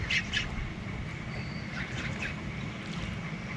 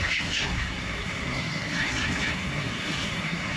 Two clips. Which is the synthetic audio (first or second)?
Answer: second